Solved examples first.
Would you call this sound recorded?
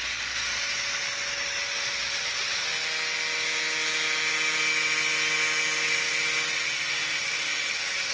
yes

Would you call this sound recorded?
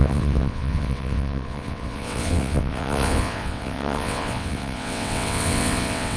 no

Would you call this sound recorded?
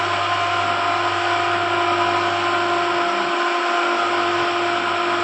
yes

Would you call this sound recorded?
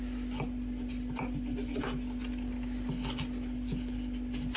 yes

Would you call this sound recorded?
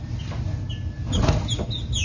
yes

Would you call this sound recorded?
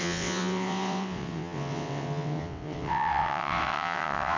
no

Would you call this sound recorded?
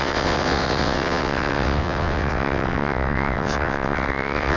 no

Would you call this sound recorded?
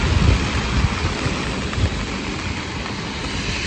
yes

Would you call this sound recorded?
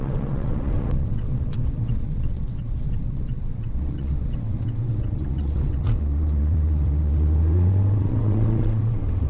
no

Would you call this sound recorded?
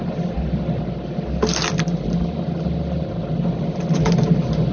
yes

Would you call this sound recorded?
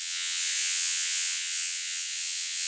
no